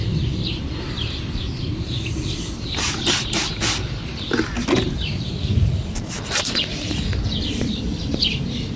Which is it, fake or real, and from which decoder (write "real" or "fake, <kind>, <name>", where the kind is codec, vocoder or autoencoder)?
fake, vocoder, BigVGAN v2